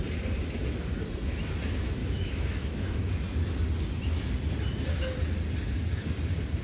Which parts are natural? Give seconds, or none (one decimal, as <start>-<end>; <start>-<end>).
0.0-2.0; 3.0-6.6